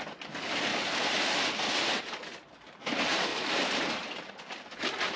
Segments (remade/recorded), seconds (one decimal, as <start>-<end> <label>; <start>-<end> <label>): 0.0-3.3 recorded; 3.3-4.3 remade; 4.3-5.2 recorded